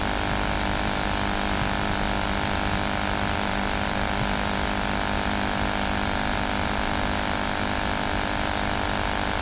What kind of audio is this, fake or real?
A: fake